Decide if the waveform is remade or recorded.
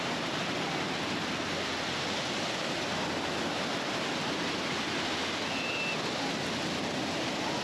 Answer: recorded